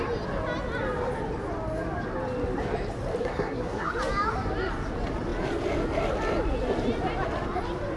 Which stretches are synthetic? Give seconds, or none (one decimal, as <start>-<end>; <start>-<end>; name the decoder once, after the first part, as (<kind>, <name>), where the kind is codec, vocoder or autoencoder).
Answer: 3.2-3.9 (codec, SNAC)

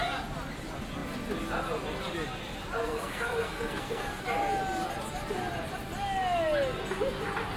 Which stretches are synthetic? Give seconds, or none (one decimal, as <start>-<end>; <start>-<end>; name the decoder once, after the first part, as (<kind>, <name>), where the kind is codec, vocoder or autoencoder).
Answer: 2.8-4.2 (codec, SNAC)